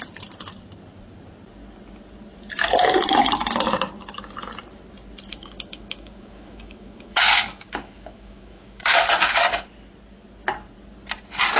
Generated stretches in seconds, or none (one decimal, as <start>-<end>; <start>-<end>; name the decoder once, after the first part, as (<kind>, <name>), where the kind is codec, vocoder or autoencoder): 5.3-9.0 (autoencoder, DAC-VAE)

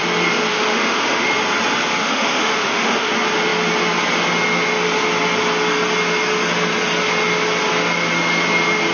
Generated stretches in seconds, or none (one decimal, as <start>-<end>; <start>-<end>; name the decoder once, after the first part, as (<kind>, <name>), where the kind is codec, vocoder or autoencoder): 0.5-1.3 (autoencoder, DAC-VAE); 2.0-3.1

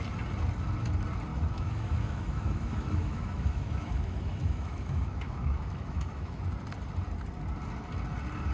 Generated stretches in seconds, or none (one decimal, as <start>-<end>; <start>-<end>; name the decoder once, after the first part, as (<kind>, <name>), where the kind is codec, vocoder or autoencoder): 1.3-6.4 (autoencoder, DAC-VAE)

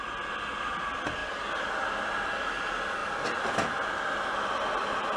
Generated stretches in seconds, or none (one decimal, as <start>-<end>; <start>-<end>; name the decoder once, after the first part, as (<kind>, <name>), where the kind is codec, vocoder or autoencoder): none

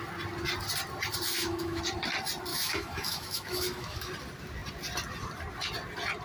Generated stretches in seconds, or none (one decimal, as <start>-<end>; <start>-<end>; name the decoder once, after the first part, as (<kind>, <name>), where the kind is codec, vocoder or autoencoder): 1.3-1.8 (autoencoder, DAC-VAE); 2.5-4.1

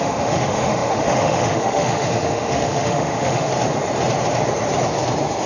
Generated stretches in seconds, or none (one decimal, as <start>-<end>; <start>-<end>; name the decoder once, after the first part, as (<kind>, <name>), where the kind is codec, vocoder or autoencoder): 0.0-3.5 (autoencoder, DAC-VAE)

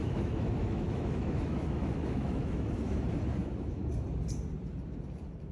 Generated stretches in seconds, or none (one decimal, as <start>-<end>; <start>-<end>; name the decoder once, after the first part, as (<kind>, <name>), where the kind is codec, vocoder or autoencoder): 0.0-3.0 (autoencoder, DAC-VAE); 3.4-3.9